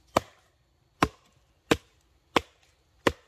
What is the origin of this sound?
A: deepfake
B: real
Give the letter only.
B